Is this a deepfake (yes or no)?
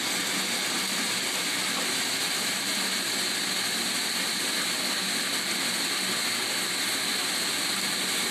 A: no